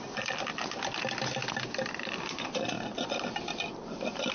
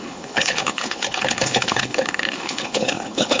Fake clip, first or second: second